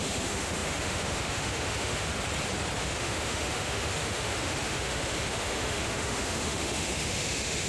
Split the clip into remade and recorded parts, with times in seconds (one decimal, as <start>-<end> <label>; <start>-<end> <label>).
0.0-2.1 remade; 2.1-2.8 recorded; 2.8-7.7 remade